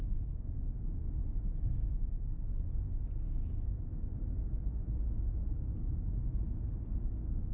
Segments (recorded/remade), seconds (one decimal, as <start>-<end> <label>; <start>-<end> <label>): 0.0-4.9 recorded; 4.9-6.7 remade; 6.7-7.5 recorded